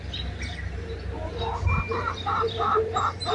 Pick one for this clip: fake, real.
fake